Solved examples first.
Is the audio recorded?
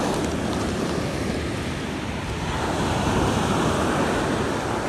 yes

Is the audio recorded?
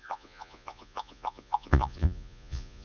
no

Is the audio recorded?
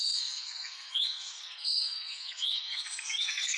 no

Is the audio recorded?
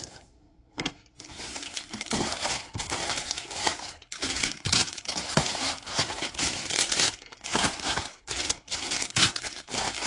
no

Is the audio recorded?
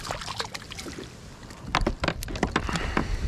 yes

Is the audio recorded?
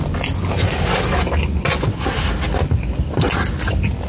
yes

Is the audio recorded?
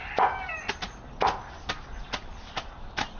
yes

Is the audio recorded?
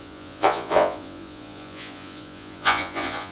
no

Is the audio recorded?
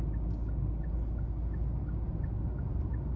yes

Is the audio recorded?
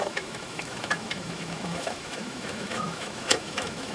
no